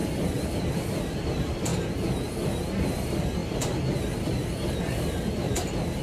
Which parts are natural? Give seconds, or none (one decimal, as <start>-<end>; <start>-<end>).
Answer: 1.7-3.0